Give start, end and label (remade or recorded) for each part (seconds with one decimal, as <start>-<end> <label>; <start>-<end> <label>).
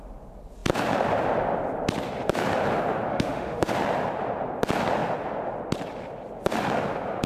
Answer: 0.0-3.1 recorded; 3.1-3.7 remade; 3.7-7.3 recorded